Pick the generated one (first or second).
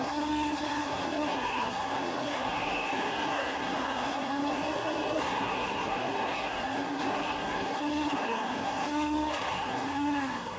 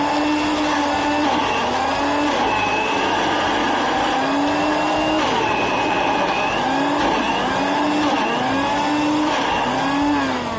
first